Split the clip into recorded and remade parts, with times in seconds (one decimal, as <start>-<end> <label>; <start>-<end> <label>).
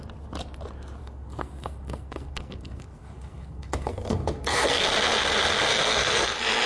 0.0-1.0 recorded; 1.0-4.8 remade; 4.8-5.7 recorded; 5.7-6.3 remade; 6.3-6.7 recorded